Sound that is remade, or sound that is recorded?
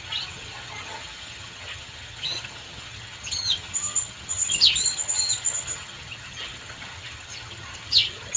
remade